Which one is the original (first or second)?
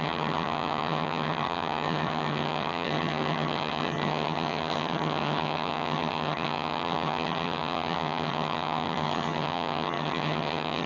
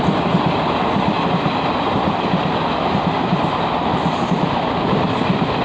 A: second